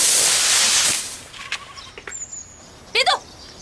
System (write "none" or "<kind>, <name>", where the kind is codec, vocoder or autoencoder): none